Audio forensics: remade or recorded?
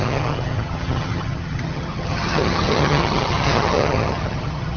remade